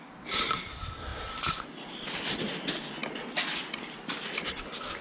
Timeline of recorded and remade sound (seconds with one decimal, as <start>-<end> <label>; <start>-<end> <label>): 0.0-5.0 recorded